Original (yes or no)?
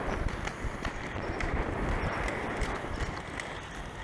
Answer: yes